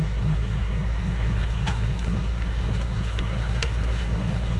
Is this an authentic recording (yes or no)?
no